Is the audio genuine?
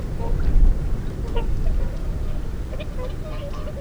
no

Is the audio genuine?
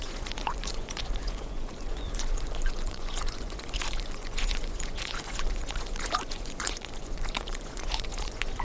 no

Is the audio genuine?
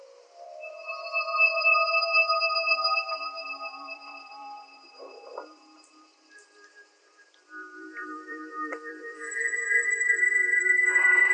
no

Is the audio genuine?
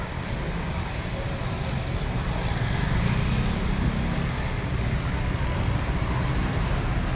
yes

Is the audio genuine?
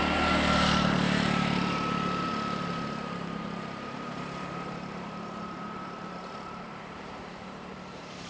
no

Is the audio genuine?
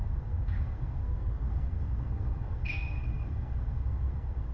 no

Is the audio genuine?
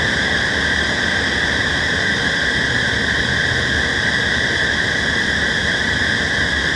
no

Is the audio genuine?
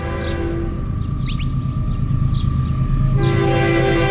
yes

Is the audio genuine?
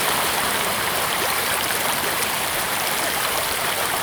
no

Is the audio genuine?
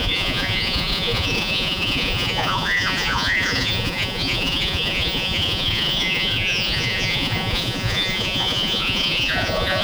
no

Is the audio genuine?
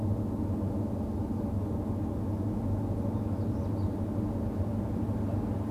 yes